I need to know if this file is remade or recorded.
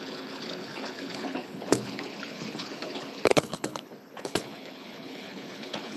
remade